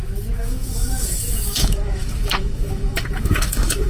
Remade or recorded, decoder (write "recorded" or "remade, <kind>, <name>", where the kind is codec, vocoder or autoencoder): remade, autoencoder, DAC-VAE